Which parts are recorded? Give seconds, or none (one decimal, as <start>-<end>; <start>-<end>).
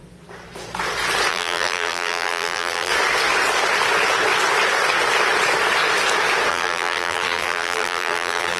0.0-1.3; 2.9-6.5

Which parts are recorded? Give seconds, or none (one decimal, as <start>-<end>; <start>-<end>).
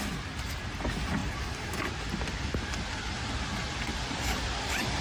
0.0-1.2; 2.4-3.9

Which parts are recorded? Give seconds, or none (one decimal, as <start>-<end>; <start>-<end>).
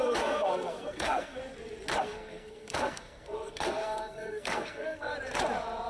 1.4-2.0; 5.1-5.9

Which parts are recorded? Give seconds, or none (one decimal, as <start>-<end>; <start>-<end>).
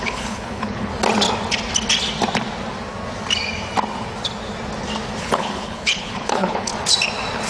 0.9-5.2; 6.7-7.5